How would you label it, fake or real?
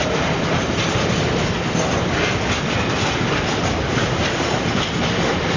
fake